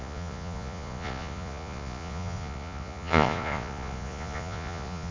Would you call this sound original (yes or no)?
no